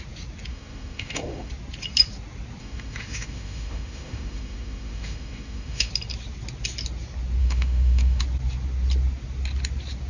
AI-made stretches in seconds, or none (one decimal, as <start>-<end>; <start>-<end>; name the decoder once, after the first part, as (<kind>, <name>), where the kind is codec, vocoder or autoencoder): 0.5-1.5 (autoencoder, DAC-VAE); 2.6-5.9; 7.4-8.2